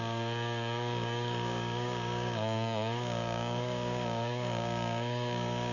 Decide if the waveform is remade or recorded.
remade